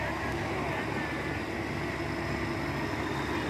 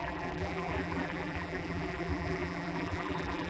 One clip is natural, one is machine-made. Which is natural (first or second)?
first